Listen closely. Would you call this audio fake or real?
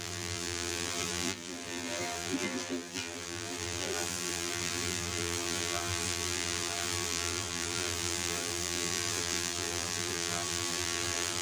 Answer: fake